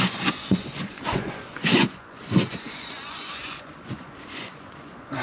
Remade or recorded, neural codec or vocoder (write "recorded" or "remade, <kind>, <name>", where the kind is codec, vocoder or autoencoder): remade, vocoder, Vocos